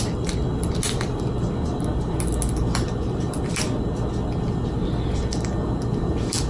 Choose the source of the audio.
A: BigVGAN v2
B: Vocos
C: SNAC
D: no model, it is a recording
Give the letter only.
D